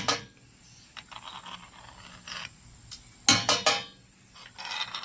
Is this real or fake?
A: real